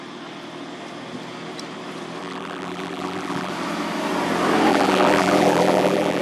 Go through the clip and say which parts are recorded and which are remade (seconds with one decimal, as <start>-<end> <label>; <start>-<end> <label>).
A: 0.0-2.2 recorded; 2.2-3.5 remade; 3.5-4.7 recorded; 4.7-6.2 remade